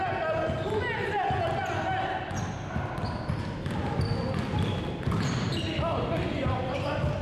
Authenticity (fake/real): real